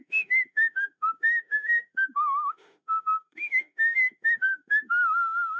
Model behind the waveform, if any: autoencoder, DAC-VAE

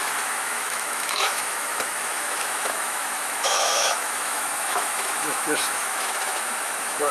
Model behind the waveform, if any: autoencoder, DAC-VAE